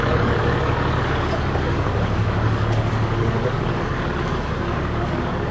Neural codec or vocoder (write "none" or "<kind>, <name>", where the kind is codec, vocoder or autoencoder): codec, DAC